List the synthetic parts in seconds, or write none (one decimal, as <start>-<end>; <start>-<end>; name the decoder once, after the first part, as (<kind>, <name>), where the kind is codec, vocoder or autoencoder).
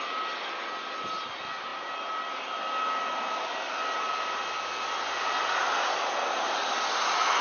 none